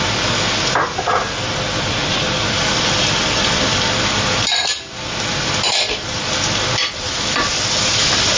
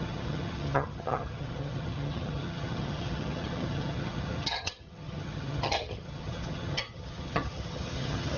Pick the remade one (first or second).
second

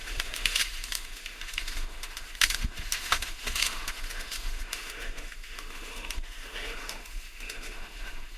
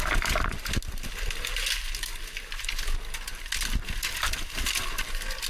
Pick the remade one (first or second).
first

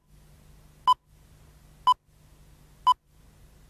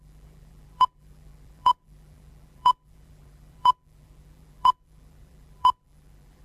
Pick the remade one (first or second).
second